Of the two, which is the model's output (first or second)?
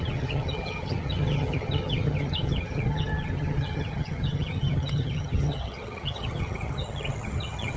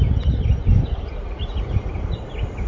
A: first